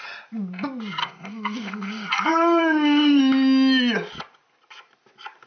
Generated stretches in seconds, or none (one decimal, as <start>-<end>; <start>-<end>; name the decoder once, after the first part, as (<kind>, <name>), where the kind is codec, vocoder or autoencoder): 1.0-3.2 (codec, SNAC)

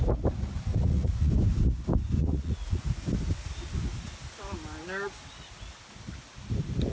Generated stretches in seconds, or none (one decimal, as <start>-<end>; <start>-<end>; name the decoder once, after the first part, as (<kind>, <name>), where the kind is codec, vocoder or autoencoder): 0.7-1.3 (vocoder, Vocos); 2.2-2.8

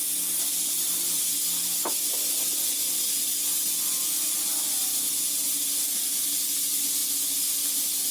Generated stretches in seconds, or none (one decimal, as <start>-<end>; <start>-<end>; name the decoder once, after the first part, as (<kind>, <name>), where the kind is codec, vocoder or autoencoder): 0.0-8.1 (vocoder, BigVGAN v2)

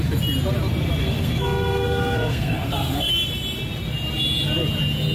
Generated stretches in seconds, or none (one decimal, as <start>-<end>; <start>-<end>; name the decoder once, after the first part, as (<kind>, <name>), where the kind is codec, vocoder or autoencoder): 1.0-3.1 (codec, SNAC)

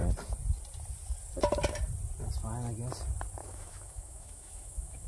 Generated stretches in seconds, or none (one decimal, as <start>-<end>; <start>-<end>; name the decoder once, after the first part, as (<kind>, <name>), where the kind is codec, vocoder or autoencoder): 3.4-5.1 (autoencoder, DAC-VAE)

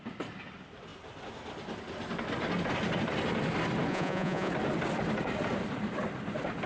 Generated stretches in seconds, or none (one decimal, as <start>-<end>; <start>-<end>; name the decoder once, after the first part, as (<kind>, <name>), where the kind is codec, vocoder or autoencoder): 3.9-4.5 (vocoder, Vocos)